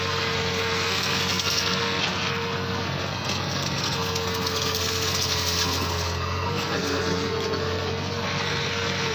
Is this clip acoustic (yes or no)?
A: no